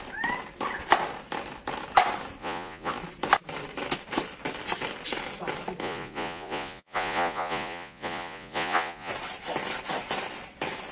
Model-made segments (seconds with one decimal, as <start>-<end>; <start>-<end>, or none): 2.4-2.9; 5.8-9.1